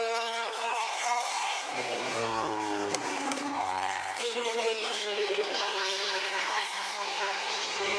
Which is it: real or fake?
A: fake